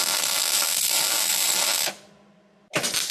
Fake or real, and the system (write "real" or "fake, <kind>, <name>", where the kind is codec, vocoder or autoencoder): real